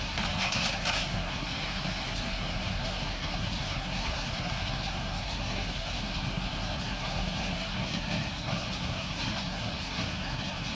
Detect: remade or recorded remade